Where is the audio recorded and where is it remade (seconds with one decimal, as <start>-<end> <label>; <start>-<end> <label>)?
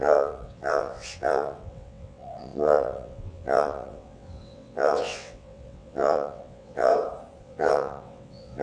0.0-6.9 remade; 6.9-7.4 recorded; 7.4-8.6 remade